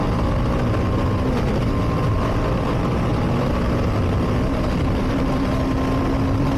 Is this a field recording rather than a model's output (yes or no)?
yes